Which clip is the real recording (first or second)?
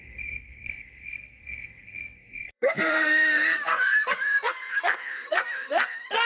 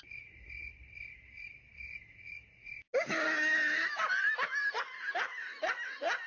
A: second